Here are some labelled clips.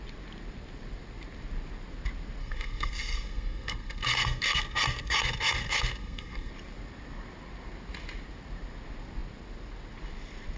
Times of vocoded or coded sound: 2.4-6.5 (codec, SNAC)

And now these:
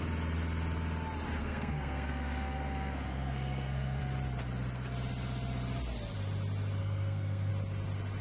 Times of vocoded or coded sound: 1.4-4.0 (codec, SNAC); 6.8-7.5

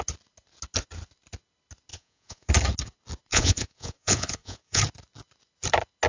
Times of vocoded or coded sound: 1.9-2.5 (vocoder, Vocos); 3.3-4.8